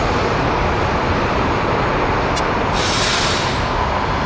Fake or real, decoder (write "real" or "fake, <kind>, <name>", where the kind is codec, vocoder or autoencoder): real